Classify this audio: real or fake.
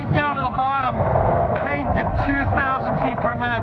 fake